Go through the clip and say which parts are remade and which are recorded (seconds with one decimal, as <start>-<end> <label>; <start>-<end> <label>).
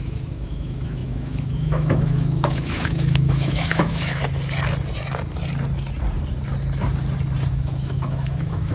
0.0-4.2 remade; 4.2-7.5 recorded; 7.5-8.7 remade